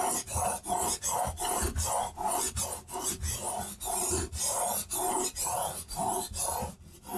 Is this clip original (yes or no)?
yes